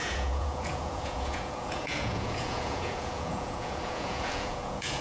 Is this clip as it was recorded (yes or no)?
no